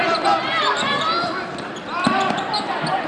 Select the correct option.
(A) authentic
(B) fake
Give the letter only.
A